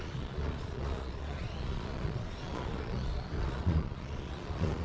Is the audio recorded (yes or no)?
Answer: no